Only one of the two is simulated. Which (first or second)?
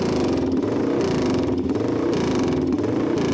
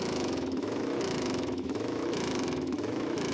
second